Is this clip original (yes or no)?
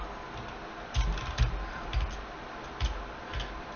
yes